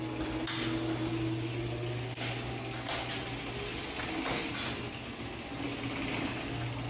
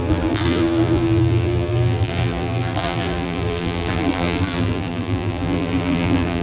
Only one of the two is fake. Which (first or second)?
second